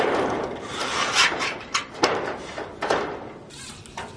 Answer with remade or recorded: recorded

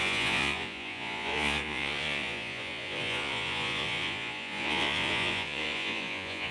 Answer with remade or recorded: remade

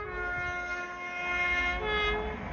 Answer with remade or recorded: recorded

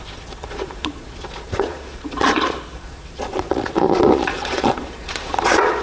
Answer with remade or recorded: remade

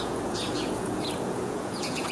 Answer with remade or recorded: remade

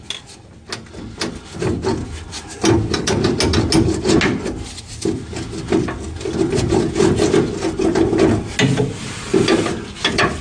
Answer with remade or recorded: recorded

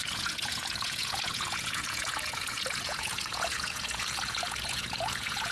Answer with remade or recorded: remade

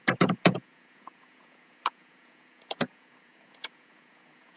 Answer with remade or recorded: remade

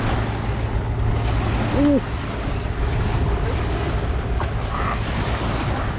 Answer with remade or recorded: recorded